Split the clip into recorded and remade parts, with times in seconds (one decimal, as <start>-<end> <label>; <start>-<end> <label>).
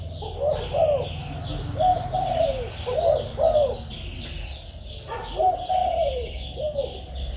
0.0-1.9 recorded; 1.9-2.7 remade; 2.7-3.3 recorded; 3.3-4.2 remade; 4.2-5.8 recorded; 5.8-7.4 remade